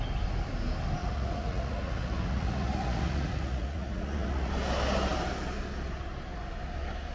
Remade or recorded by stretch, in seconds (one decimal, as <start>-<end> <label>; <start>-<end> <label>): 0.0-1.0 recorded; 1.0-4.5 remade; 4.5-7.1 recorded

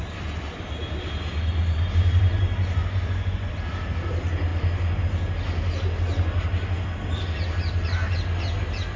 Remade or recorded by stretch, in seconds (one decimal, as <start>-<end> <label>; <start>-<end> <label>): 0.0-2.8 recorded; 2.8-3.5 remade; 3.5-9.0 recorded

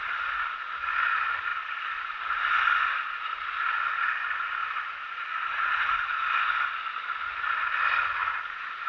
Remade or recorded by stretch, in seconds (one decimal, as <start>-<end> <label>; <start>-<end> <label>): 0.0-4.6 recorded; 4.6-6.3 remade; 6.3-8.9 recorded

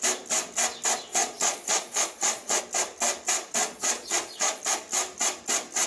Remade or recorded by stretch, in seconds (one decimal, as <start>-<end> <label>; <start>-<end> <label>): 0.0-1.1 recorded; 1.1-2.6 remade; 2.6-3.6 recorded; 3.6-4.6 remade; 4.6-5.9 recorded

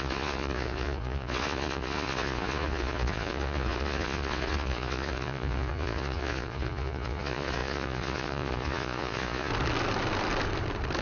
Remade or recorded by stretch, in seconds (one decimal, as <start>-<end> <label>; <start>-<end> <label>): 0.0-9.5 remade; 9.5-11.0 recorded

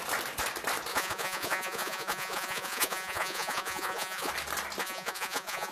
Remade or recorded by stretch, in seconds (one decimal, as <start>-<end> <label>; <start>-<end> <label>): 0.0-0.9 recorded; 0.9-4.3 remade; 4.3-4.8 recorded; 4.8-5.7 remade